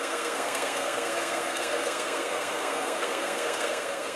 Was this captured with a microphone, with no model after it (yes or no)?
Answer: no